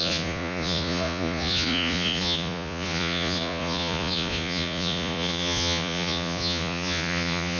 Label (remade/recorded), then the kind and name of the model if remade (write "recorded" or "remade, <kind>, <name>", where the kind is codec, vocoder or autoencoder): remade, vocoder, Vocos